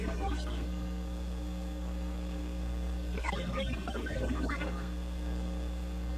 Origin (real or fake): fake